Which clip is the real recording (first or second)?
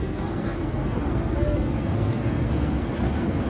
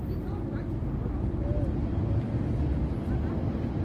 second